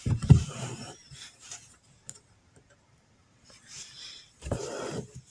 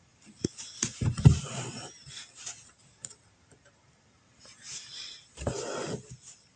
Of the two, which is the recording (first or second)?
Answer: second